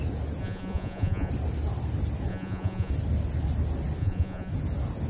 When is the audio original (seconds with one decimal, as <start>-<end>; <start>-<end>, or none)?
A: 0.0-0.4; 1.3-2.3; 2.9-4.0; 4.5-5.1